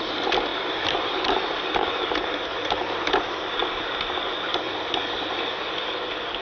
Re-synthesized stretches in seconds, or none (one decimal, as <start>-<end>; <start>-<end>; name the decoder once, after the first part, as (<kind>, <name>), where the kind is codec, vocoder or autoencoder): 0.5-3.2 (vocoder, BigVGAN v2)